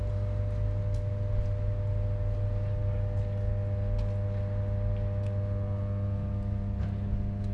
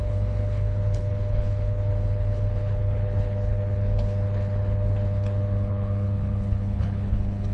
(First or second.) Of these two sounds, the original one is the first